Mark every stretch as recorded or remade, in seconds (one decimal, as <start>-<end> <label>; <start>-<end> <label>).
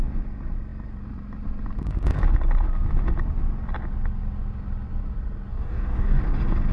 0.0-5.5 recorded; 5.5-6.2 remade; 6.2-6.7 recorded